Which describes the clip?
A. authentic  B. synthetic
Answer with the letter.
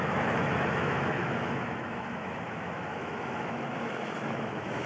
B